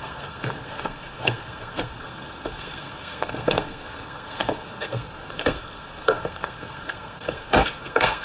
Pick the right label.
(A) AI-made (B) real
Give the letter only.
A